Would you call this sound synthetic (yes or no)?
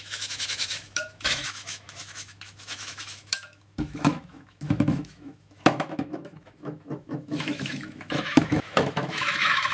yes